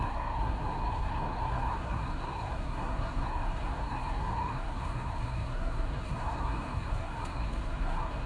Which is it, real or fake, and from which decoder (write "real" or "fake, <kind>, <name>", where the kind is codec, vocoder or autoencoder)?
fake, codec, SNAC